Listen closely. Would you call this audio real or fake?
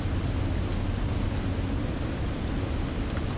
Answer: real